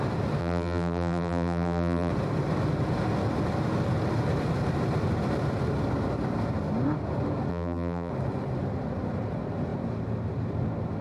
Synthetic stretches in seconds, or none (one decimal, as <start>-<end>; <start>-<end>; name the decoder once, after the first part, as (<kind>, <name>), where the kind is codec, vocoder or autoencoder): 0.4-2.1 (vocoder, BigVGAN v2); 7.5-8.1